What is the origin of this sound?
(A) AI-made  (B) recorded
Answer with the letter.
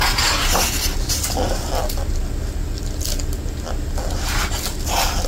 B